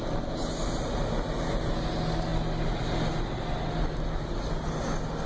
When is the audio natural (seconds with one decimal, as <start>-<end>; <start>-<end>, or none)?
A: 0.0-5.3